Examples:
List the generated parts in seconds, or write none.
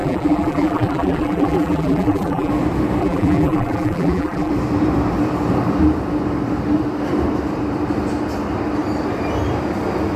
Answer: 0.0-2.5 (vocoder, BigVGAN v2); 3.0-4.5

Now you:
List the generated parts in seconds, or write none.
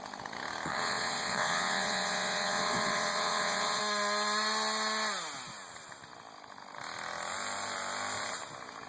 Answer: 0.7-3.8 (vocoder, WaveNeXt)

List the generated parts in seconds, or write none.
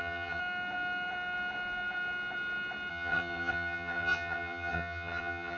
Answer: 0.0-0.4 (vocoder, HiFi-GAN); 2.9-5.6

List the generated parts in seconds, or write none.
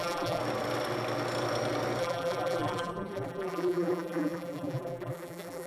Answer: 0.0-0.4 (vocoder, BigVGAN v2); 2.0-5.7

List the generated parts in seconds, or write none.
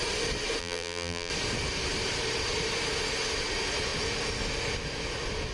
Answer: 0.6-1.3 (vocoder, BigVGAN v2)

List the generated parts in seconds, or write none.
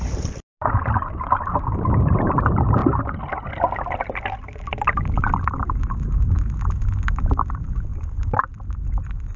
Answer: none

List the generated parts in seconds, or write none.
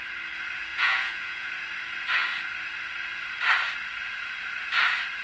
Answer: 0.7-1.5 (vocoder, Vocos)